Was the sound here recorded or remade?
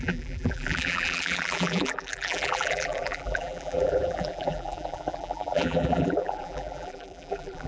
remade